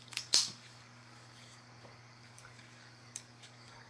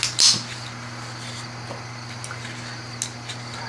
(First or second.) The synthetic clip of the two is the first